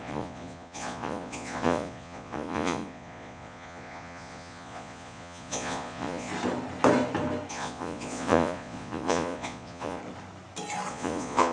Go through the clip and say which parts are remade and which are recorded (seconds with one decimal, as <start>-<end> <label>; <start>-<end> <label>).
0.0-6.3 remade; 6.3-7.5 recorded; 7.5-10.0 remade; 10.0-10.9 recorded; 10.9-11.5 remade